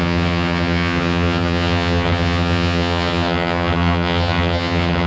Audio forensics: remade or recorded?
remade